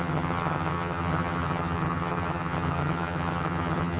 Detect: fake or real fake